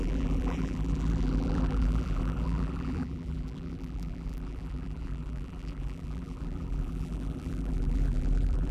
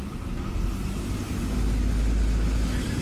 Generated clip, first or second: first